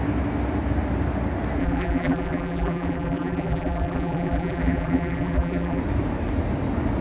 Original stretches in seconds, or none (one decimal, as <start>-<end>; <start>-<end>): 0.0-1.6; 5.8-7.0